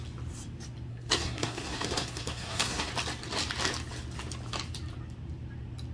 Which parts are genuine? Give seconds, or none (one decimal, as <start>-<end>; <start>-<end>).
0.0-0.9; 2.9-5.9